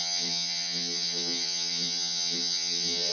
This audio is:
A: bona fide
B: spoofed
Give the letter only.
B